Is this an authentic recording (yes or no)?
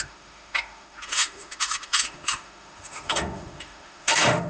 no